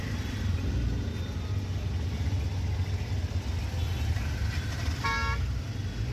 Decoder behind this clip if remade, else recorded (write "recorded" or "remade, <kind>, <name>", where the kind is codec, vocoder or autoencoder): recorded